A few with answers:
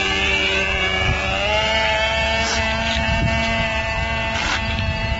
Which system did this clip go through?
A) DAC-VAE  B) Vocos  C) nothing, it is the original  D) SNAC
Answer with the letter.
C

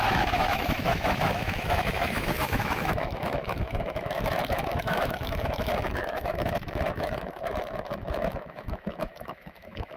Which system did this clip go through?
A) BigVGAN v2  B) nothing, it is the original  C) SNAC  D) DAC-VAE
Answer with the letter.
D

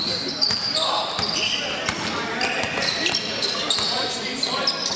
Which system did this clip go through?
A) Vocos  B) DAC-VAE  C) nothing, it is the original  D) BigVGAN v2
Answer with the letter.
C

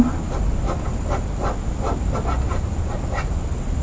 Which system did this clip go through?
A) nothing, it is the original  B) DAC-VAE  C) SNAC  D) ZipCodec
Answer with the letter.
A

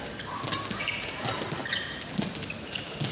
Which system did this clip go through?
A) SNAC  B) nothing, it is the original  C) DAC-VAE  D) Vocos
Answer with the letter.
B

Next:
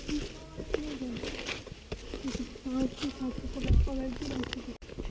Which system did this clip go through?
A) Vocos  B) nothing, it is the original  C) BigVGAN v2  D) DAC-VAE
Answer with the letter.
B